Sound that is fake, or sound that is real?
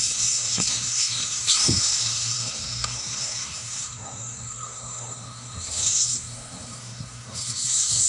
fake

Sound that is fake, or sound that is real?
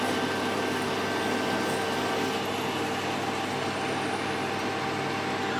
real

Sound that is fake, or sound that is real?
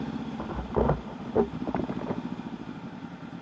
real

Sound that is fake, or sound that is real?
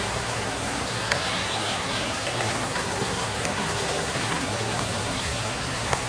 fake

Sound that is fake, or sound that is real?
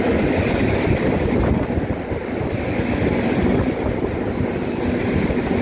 real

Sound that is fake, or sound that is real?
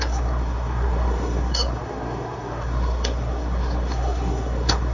fake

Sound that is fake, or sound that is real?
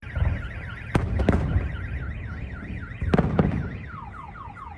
real